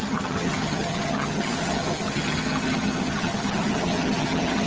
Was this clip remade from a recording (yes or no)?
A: yes